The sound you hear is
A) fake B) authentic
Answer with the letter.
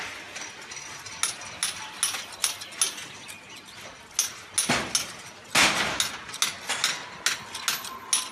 B